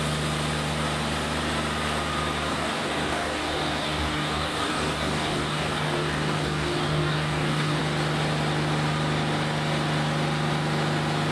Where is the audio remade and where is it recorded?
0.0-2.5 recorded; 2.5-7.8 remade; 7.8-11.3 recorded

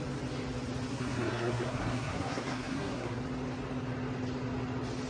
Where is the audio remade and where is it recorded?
0.0-0.9 recorded; 0.9-3.2 remade; 3.2-5.1 recorded

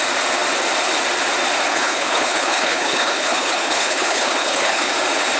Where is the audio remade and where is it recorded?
0.0-1.7 recorded; 1.7-4.9 remade; 4.9-5.4 recorded

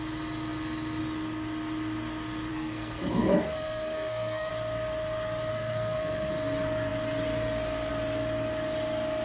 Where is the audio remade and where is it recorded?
0.0-2.5 recorded; 2.5-4.5 remade; 4.5-5.5 recorded; 5.5-6.3 remade; 6.3-9.2 recorded

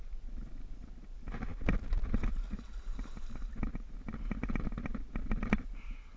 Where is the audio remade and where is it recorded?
0.0-6.2 recorded

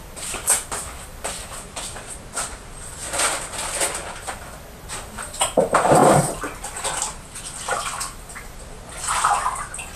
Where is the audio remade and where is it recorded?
0.0-10.0 recorded

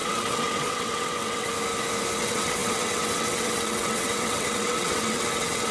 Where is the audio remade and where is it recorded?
0.0-1.5 remade; 1.5-2.2 recorded; 2.2-5.7 remade